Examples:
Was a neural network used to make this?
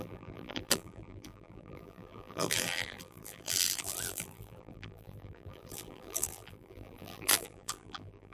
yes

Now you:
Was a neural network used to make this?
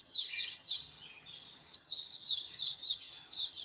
yes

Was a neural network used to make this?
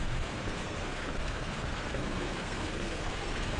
yes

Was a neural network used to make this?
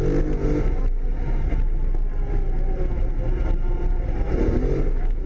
no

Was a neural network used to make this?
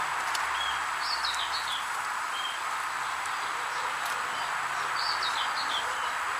no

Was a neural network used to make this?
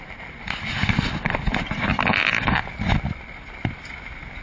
no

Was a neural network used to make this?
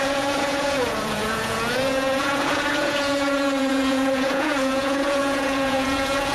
yes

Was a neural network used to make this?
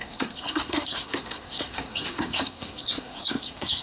yes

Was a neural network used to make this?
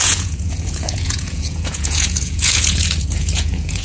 yes